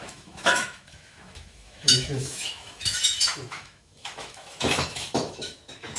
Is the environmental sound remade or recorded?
remade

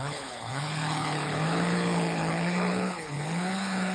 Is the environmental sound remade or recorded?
remade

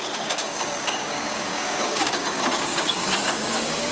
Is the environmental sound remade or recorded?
remade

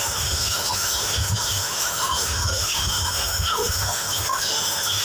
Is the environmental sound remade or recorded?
remade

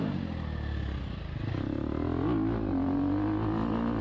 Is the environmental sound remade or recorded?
recorded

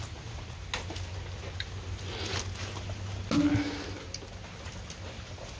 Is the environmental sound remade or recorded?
recorded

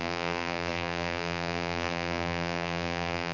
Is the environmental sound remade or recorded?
remade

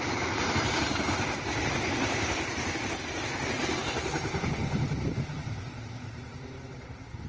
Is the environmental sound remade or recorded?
remade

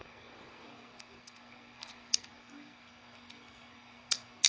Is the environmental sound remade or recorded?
remade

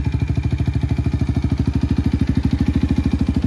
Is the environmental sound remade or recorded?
recorded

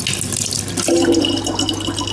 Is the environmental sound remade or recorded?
recorded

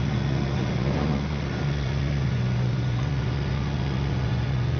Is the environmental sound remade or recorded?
remade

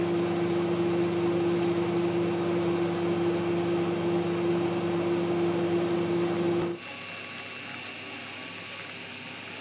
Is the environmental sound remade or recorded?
recorded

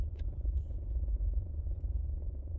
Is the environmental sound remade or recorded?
remade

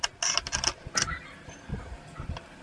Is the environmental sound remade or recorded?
recorded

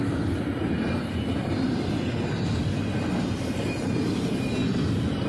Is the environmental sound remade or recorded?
recorded